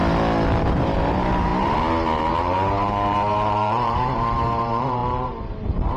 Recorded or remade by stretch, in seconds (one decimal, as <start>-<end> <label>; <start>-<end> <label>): 0.0-0.6 recorded; 0.6-6.0 remade